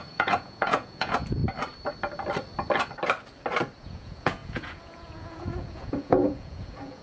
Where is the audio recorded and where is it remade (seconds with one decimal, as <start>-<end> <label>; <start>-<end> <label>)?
0.0-1.4 remade; 1.4-3.8 recorded; 3.8-7.0 remade